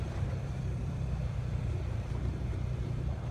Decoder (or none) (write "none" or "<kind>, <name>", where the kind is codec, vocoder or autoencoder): vocoder, BigVGAN v2